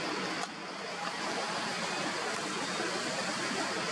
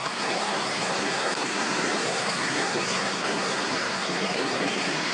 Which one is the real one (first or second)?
first